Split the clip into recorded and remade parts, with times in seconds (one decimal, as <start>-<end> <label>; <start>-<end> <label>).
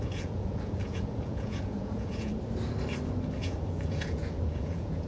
0.0-2.3 remade; 2.3-3.4 recorded; 3.4-5.1 remade